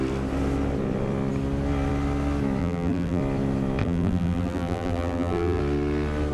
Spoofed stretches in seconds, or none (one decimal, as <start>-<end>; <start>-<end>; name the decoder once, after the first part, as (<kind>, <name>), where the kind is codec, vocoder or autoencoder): 2.6-3.2 (vocoder, BigVGAN v2); 3.8-5.6